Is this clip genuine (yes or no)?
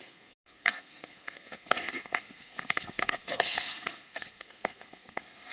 no